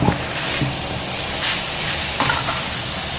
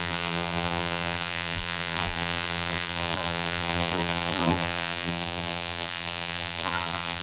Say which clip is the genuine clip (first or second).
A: first